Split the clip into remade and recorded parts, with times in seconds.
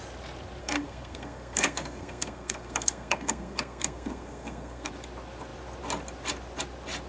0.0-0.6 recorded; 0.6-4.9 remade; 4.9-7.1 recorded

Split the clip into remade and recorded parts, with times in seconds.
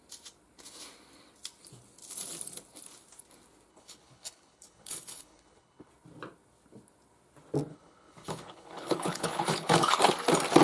0.0-3.7 recorded; 3.7-5.9 remade; 5.9-7.7 recorded; 7.7-10.1 remade; 10.1-10.6 recorded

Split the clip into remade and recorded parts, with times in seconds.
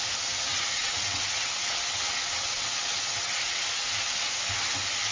0.0-0.5 recorded; 0.5-3.6 remade; 3.6-5.1 recorded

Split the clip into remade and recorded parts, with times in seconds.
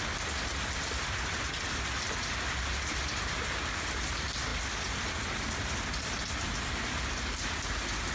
0.0-8.1 recorded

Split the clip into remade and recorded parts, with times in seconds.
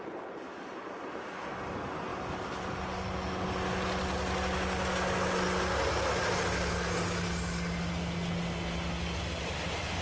0.0-10.0 recorded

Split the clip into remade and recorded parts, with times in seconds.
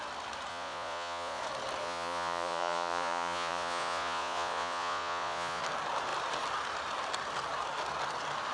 0.0-0.5 recorded; 0.5-1.4 remade; 1.4-1.8 recorded; 1.8-5.6 remade; 5.6-8.5 recorded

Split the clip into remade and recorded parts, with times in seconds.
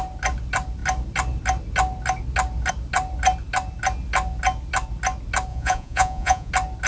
0.0-5.5 recorded; 5.5-6.5 remade; 6.5-6.9 recorded